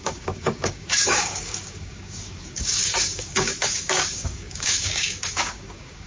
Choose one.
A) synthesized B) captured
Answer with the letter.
A